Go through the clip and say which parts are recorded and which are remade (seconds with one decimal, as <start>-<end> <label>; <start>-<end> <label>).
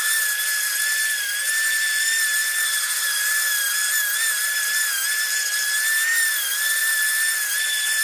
0.0-8.0 recorded